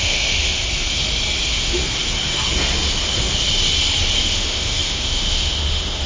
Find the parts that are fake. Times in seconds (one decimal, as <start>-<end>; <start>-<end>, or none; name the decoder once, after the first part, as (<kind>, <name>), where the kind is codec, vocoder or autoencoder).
0.0-0.6 (autoencoder, DAC-VAE); 1.4-1.8; 4.2-6.1